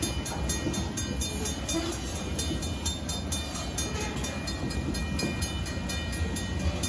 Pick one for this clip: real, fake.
real